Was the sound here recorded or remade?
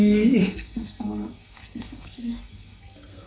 remade